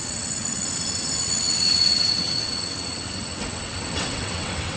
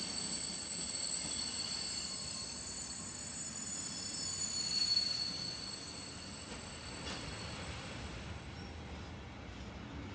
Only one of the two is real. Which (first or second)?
second